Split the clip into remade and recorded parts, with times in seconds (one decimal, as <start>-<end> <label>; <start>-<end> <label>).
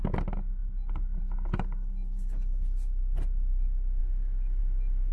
0.0-4.0 recorded; 4.0-4.6 remade; 4.6-5.1 recorded